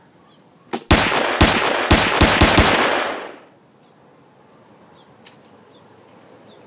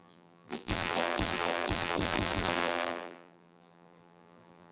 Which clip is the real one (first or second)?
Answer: first